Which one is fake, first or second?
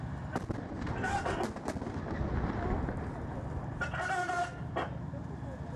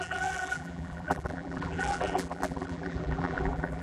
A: second